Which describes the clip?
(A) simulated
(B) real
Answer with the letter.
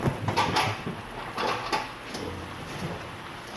B